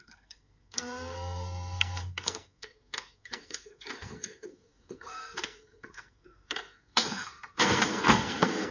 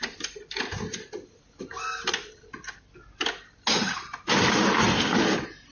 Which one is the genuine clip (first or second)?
second